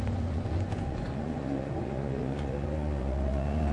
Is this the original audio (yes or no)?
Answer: no